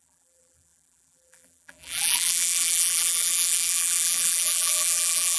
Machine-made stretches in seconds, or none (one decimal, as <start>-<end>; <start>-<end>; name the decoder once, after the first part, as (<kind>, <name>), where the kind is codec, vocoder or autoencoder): 0.0-5.4 (vocoder, BigVGAN v2)